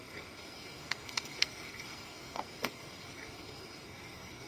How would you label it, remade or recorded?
remade